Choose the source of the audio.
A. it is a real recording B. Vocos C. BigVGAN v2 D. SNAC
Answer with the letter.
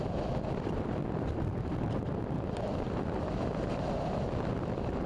A